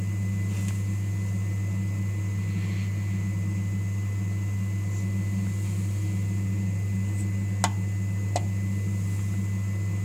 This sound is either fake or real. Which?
real